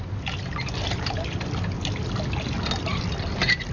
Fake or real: real